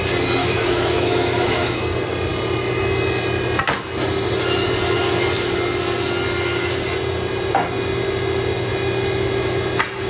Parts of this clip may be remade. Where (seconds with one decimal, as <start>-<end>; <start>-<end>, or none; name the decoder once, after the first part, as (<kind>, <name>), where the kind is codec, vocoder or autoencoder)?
0.4-1.8 (autoencoder, DAC-VAE)

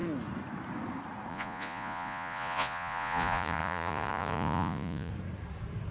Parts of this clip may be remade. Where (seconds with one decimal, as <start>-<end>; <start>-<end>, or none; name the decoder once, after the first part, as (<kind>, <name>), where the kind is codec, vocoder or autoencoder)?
1.3-5.1 (vocoder, Vocos)